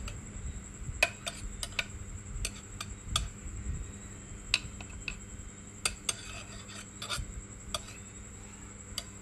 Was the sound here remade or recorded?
recorded